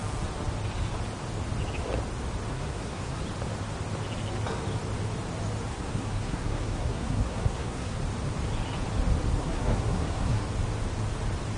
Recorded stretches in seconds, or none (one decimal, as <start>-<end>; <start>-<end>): 0.0-2.5; 3.2-5.7; 8.0-9.4; 10.4-11.6